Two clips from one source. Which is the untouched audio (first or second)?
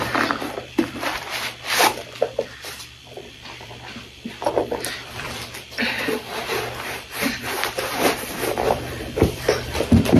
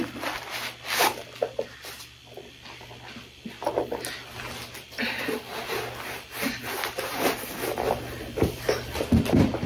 second